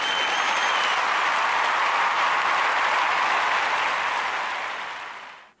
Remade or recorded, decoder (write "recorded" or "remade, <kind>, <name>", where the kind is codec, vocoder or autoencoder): recorded